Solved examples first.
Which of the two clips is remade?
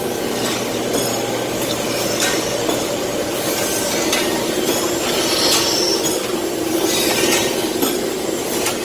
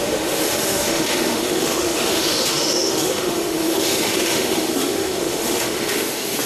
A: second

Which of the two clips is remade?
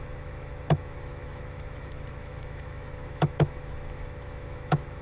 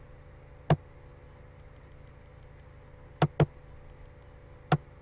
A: first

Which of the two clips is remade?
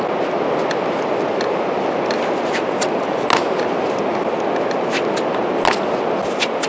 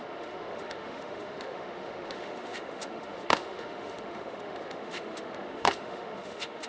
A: second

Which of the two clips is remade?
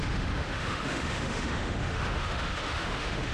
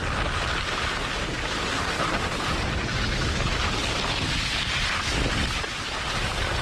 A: first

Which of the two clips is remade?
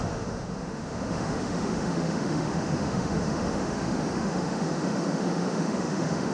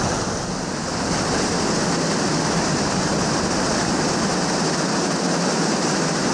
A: first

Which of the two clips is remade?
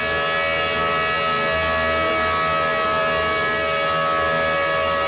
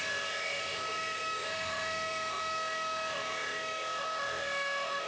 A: second